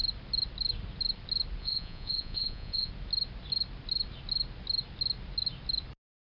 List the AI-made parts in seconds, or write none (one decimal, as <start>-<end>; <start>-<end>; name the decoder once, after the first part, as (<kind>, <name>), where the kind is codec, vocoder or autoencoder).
1.6-2.9 (vocoder, Vocos)